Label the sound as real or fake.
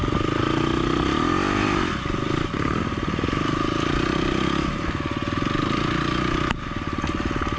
real